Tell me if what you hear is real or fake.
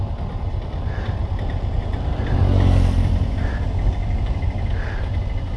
real